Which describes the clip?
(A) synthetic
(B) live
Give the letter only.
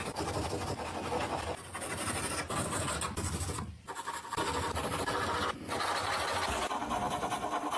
B